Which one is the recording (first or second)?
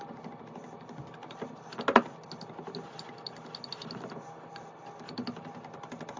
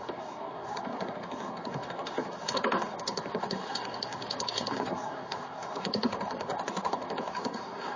first